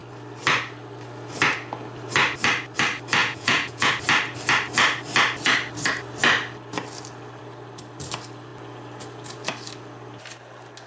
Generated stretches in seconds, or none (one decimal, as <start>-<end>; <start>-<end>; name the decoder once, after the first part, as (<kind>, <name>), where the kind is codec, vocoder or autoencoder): 3.2-3.9 (vocoder, Vocos)